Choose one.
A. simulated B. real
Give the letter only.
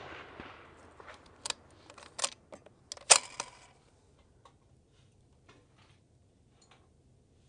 B